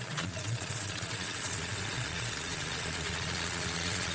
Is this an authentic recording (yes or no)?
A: no